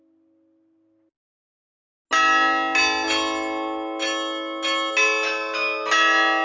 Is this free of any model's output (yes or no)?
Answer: yes